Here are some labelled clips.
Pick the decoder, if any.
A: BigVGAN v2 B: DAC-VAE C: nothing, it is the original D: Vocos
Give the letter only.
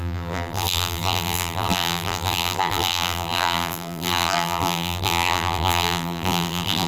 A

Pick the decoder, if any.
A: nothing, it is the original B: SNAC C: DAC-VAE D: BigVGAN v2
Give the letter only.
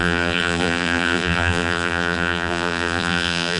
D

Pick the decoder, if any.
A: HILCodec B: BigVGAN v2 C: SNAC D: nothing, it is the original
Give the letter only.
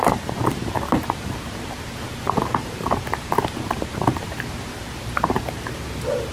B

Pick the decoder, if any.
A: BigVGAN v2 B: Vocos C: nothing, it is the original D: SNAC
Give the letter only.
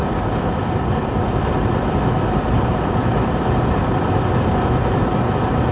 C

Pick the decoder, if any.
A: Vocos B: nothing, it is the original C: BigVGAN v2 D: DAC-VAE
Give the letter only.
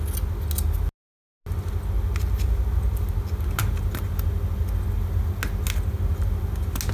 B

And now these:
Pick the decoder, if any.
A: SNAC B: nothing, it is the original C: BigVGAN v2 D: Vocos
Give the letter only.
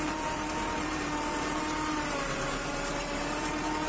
C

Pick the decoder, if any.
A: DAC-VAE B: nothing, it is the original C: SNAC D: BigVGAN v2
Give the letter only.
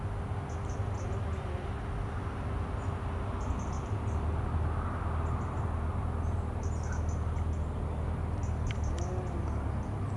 B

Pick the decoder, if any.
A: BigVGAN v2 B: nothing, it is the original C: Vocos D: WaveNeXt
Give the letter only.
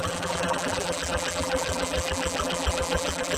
A